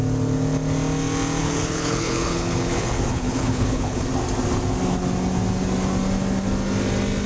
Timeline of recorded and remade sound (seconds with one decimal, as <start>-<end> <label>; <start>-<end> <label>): 0.0-1.4 recorded; 1.4-4.0 remade; 4.0-7.3 recorded